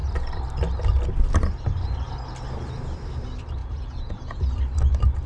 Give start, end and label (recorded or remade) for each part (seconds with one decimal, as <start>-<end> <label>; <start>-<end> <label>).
0.0-3.6 recorded; 3.6-4.4 remade; 4.4-5.3 recorded